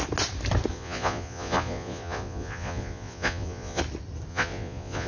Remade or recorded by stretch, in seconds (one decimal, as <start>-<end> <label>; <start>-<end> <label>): 0.0-0.7 recorded; 0.7-3.8 remade; 3.8-4.3 recorded; 4.3-5.1 remade

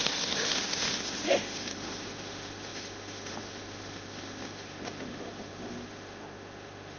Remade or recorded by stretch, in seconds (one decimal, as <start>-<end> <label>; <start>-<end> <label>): 0.0-7.0 remade

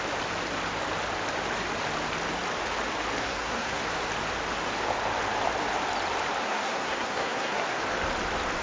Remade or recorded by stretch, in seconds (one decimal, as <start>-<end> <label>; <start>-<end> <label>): 0.0-3.2 recorded; 3.2-3.8 remade; 3.8-6.4 recorded; 6.4-7.8 remade; 7.8-8.6 recorded